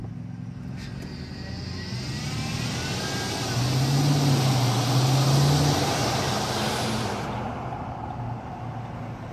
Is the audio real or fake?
real